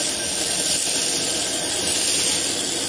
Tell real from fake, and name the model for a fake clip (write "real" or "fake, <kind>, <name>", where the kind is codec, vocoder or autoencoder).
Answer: real